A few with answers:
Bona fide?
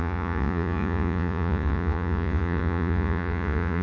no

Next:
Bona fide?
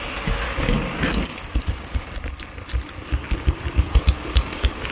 yes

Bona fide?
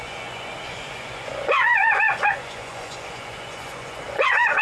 no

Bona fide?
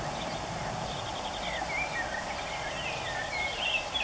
yes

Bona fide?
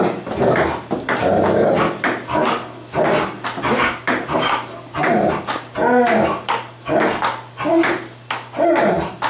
yes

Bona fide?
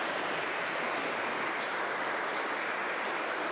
yes